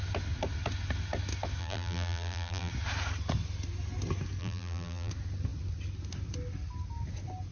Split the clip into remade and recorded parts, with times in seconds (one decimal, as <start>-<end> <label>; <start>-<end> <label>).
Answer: 0.0-1.6 recorded; 1.6-2.7 remade; 2.7-4.4 recorded; 4.4-5.1 remade; 5.1-7.5 recorded